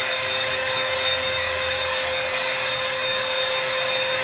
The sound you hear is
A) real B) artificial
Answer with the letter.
B